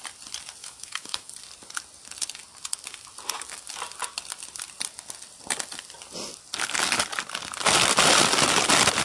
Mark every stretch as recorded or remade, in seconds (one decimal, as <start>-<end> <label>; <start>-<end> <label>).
0.0-0.6 recorded; 0.6-1.3 remade; 1.3-9.0 recorded